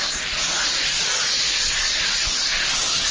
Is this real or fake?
real